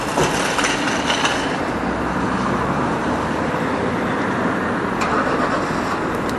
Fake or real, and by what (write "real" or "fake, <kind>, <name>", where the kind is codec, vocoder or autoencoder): real